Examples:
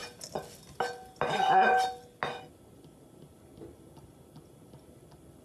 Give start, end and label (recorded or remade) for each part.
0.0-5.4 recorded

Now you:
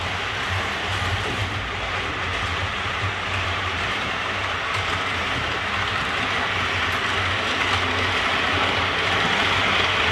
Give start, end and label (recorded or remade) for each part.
0.0-2.5 recorded; 2.5-5.2 remade; 5.2-10.1 recorded

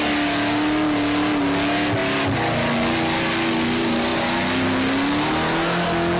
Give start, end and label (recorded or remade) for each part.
0.0-6.2 recorded

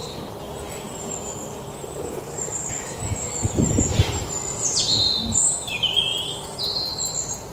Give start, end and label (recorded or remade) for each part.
0.0-7.5 recorded